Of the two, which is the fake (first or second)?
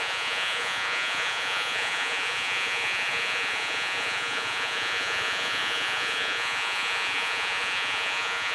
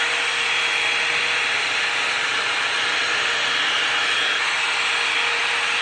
first